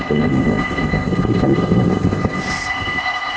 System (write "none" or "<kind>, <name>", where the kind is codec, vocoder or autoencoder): codec, ZipCodec